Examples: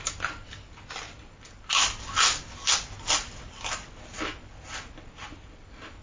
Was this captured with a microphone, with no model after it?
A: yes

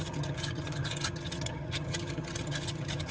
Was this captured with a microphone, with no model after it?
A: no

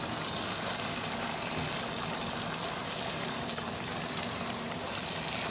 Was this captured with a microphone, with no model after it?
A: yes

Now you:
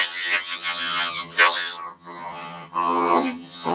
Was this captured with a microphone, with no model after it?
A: no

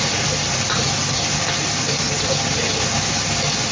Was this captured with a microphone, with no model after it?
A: yes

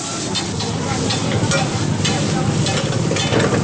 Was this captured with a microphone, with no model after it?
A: yes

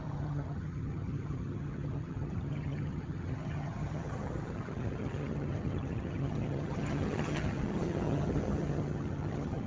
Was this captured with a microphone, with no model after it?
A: no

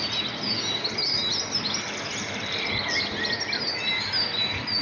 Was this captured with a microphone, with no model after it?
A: yes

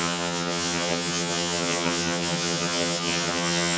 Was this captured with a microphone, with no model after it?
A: no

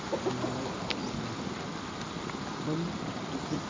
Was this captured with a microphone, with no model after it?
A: yes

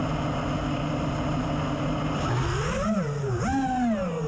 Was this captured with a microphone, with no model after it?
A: yes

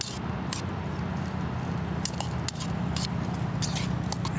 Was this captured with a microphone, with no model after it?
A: yes